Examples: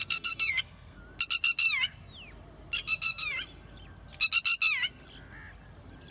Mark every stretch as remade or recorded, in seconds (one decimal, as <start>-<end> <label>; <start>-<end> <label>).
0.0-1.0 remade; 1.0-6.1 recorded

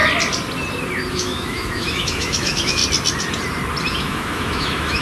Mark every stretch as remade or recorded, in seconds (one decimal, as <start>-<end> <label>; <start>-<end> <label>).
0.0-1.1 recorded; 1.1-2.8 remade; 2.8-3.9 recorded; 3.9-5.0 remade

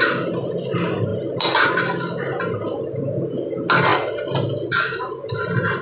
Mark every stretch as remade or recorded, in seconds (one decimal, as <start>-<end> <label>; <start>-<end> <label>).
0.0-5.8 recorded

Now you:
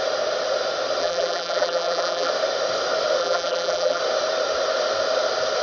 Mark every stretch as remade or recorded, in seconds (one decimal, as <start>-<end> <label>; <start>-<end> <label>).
0.0-1.0 recorded; 1.0-2.3 remade; 2.3-3.2 recorded; 3.2-4.0 remade; 4.0-5.6 recorded

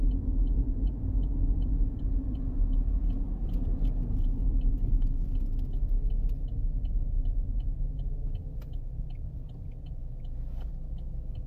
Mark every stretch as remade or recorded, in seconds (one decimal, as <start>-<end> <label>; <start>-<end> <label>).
0.0-11.5 recorded

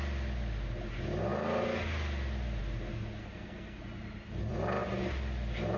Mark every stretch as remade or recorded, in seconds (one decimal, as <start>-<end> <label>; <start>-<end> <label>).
0.0-3.2 recorded; 3.2-3.8 remade; 3.8-5.8 recorded

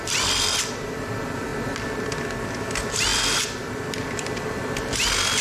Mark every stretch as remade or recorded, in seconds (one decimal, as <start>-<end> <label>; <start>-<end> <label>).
0.0-1.5 remade; 1.5-2.6 recorded; 2.6-5.4 remade

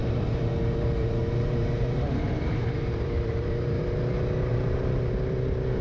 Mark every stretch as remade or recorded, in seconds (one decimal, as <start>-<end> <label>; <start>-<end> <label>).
0.0-0.5 remade; 0.5-1.0 recorded; 1.0-3.8 remade; 3.8-4.5 recorded; 4.5-5.1 remade; 5.1-5.8 recorded